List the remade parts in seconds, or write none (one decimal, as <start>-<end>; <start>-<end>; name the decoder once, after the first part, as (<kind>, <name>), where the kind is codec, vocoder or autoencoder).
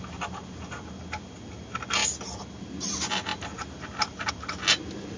none